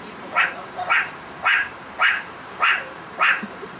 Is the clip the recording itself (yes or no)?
no